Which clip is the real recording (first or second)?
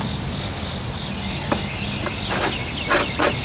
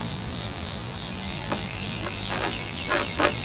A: first